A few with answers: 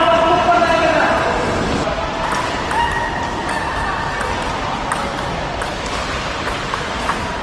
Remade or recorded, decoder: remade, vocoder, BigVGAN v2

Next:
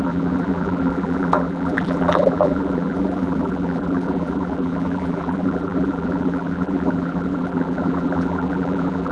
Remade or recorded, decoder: remade, vocoder, BigVGAN v2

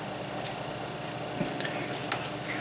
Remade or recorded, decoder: recorded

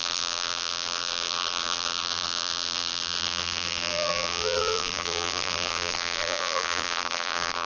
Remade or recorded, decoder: remade, vocoder, BigVGAN v2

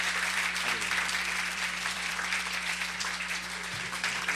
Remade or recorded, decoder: remade, vocoder, BigVGAN v2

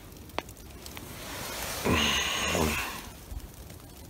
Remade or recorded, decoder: recorded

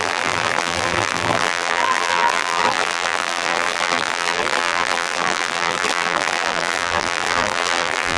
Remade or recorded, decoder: remade, vocoder, BigVGAN v2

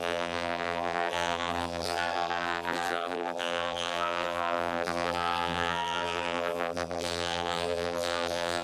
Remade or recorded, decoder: remade, vocoder, BigVGAN v2